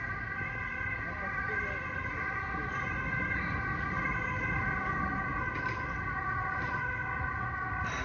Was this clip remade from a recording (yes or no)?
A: no